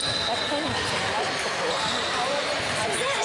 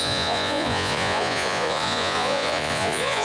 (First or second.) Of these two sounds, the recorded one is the first